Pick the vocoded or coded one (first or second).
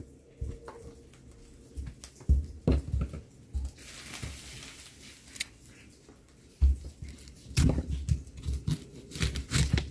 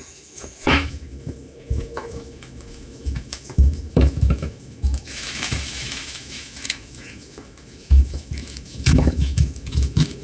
second